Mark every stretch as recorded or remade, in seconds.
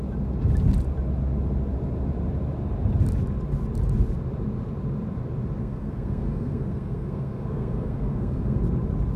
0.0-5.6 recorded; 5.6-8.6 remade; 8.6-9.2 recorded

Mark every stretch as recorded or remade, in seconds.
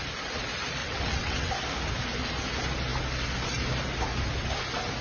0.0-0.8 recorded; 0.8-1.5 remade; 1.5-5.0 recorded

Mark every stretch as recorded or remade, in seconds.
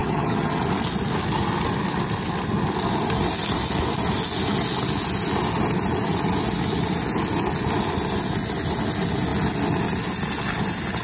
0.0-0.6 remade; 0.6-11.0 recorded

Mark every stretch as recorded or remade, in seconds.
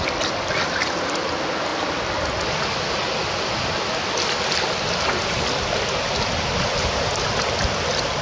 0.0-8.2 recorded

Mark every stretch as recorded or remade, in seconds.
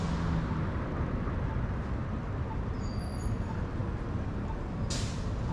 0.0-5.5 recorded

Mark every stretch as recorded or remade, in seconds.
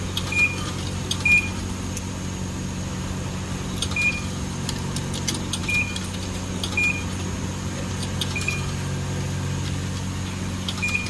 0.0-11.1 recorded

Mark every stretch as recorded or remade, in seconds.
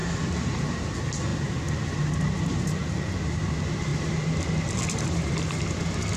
0.0-6.2 recorded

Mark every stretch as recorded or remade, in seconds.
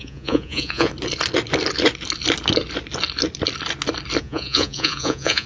0.0-0.9 remade; 0.9-4.2 recorded; 4.2-5.5 remade